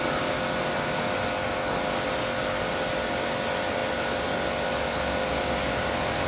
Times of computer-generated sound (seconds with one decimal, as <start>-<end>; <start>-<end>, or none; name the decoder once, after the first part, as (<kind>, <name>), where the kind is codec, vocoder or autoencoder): none